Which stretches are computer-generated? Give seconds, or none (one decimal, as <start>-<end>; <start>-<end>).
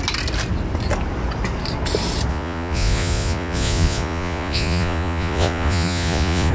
2.3-6.5